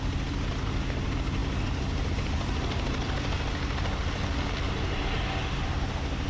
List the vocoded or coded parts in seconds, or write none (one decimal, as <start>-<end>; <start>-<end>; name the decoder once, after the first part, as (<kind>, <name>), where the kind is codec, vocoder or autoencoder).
none